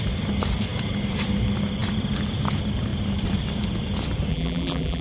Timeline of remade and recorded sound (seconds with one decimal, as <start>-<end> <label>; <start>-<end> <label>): 0.0-4.3 recorded; 4.3-5.0 remade